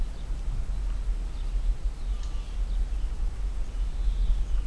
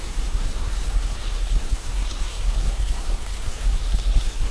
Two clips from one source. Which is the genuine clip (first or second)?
first